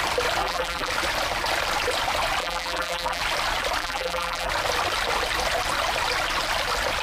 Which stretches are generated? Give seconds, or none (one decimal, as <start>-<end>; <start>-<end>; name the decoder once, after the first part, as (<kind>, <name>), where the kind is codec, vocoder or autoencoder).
0.4-0.9 (vocoder, BigVGAN v2); 2.4-3.2; 3.8-4.5

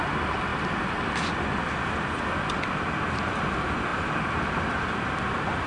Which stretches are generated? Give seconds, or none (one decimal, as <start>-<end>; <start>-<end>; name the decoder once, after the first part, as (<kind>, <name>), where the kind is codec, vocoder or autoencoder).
none

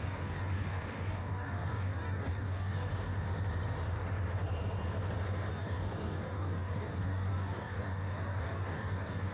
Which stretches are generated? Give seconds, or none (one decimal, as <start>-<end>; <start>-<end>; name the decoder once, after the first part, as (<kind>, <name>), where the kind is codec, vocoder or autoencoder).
0.0-2.9 (codec, DAC); 5.5-9.3